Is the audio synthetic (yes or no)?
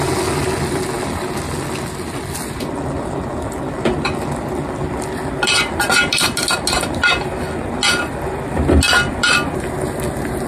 no